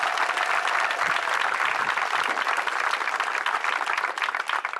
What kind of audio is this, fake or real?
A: real